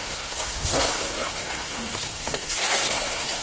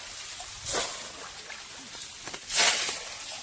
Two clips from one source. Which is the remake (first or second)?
first